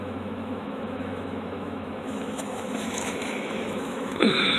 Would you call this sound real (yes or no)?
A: no